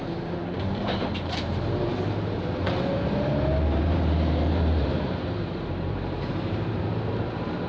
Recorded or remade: remade